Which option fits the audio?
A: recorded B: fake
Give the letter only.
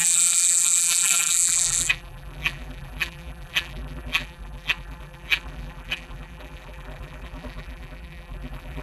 B